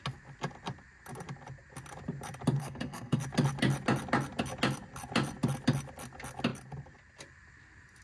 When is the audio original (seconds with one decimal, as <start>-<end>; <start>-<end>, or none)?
0.0-2.6; 3.2-8.0